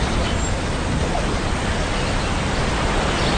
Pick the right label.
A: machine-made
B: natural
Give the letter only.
B